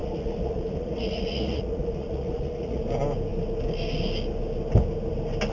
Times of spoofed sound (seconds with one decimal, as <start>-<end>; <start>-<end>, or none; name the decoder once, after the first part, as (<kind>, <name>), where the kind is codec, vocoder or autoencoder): 0.0-2.8 (vocoder, Vocos)